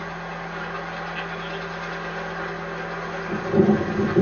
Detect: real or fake real